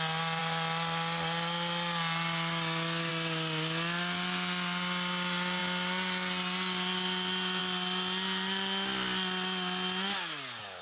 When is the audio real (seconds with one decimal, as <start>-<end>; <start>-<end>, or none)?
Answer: 0.0-10.8